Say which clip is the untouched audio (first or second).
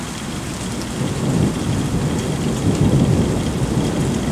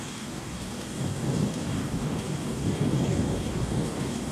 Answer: first